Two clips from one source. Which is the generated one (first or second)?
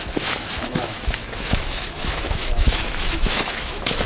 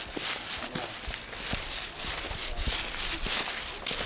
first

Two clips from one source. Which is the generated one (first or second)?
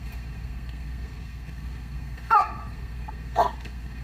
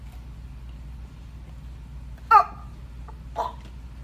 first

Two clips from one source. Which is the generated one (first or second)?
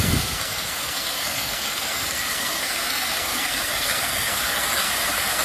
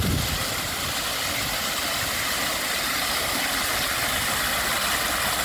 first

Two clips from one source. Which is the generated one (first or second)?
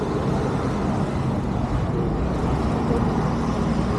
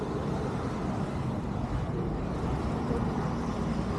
second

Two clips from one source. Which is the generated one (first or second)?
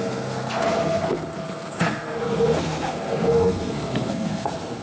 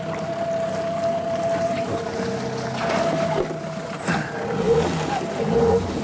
first